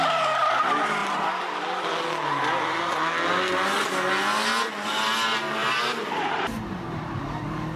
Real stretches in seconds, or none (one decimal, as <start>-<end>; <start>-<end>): 0.0-5.6; 7.2-7.8